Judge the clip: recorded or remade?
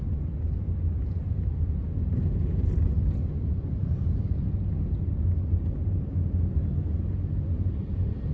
recorded